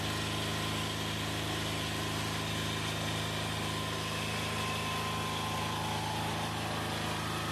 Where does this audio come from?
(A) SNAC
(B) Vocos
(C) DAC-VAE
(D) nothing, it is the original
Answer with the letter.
D